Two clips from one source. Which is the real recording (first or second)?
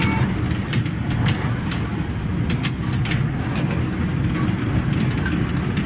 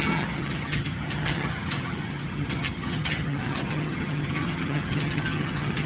first